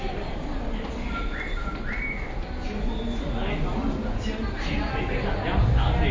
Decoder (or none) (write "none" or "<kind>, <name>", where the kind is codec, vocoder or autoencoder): none